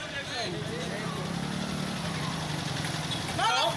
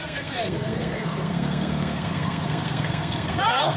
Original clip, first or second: first